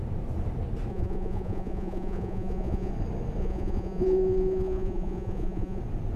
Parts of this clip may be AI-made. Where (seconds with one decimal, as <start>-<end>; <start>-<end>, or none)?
0.9-2.9; 3.4-5.8